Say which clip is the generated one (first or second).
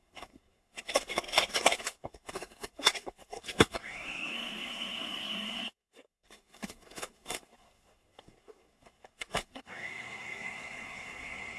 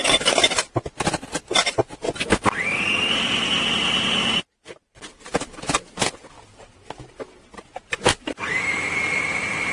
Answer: first